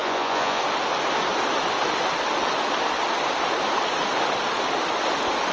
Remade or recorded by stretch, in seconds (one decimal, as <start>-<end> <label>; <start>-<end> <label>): 0.0-0.6 remade; 0.6-5.5 recorded